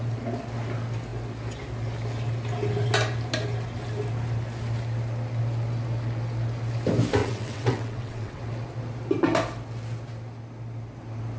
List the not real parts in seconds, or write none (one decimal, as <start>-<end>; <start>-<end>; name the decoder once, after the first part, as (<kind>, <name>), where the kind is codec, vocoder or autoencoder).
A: 7.2-8.4 (vocoder, WaveNeXt)